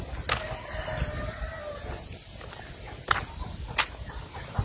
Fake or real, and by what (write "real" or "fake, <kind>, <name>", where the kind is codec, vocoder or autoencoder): real